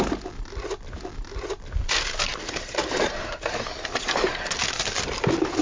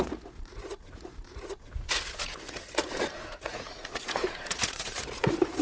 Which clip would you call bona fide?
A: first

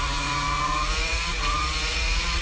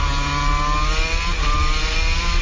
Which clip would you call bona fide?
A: second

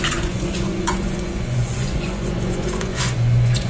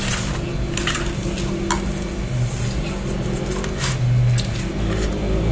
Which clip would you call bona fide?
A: second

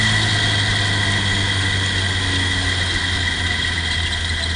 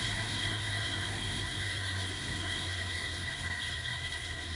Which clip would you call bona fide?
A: first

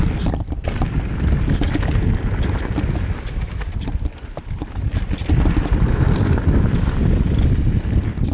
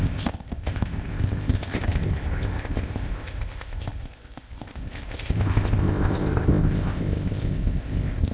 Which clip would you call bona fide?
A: first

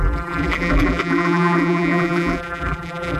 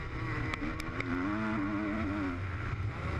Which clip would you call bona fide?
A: second